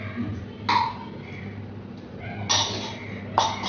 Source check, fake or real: real